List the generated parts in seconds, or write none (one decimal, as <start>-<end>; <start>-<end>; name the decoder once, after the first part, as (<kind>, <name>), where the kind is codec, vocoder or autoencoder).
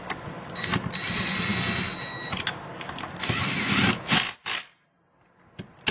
none